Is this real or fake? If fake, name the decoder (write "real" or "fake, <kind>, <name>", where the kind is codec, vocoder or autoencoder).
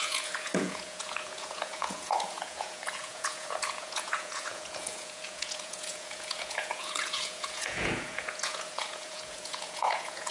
fake, vocoder, Vocos